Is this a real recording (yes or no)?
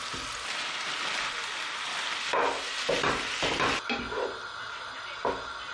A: yes